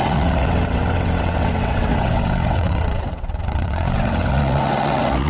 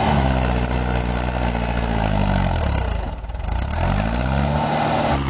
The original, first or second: second